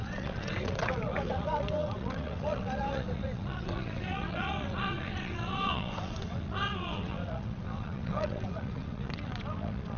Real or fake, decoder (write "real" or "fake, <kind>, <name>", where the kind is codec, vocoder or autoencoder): fake, vocoder, WaveNeXt